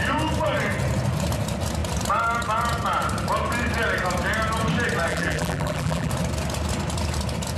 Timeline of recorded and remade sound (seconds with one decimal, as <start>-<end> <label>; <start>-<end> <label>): 0.0-5.1 recorded; 5.1-6.1 remade; 6.1-7.6 recorded